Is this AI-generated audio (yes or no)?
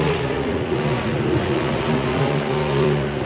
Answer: yes